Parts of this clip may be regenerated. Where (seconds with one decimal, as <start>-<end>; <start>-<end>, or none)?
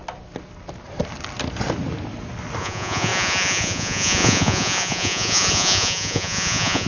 2.6-6.9